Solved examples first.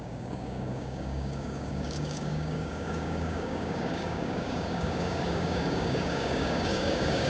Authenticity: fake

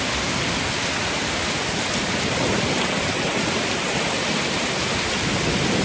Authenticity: real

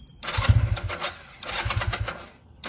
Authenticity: real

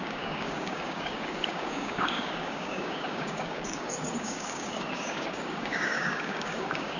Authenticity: fake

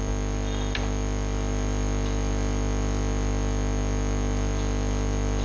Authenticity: real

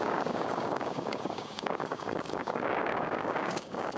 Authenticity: fake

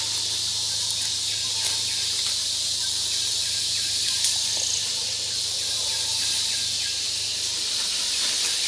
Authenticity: real